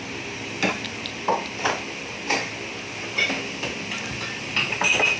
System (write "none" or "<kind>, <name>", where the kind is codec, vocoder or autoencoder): none